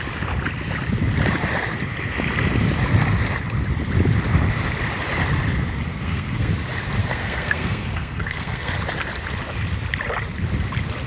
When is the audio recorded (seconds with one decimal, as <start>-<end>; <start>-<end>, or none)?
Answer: 0.0-5.9; 6.5-7.0; 8.7-11.1